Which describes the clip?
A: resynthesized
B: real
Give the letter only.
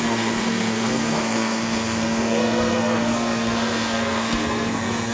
A